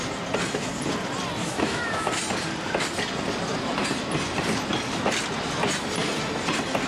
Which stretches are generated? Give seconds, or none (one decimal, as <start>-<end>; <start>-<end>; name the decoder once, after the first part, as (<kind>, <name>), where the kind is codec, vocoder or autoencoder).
1.4-2.1 (autoencoder, DAC-VAE)